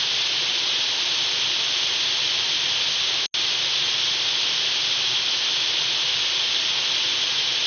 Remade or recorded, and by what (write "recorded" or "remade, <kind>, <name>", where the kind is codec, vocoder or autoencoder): recorded